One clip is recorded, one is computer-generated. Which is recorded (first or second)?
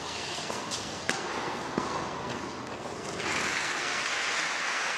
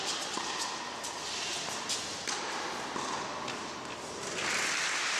second